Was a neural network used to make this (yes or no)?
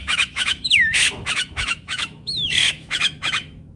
yes